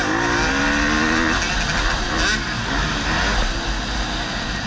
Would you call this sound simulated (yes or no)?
no